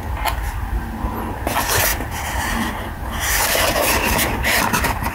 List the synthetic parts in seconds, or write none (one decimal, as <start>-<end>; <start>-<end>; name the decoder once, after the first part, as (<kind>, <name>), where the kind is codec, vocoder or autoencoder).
1.9-5.1 (vocoder, BigVGAN v2)